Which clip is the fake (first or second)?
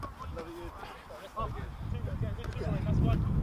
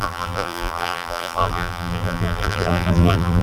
second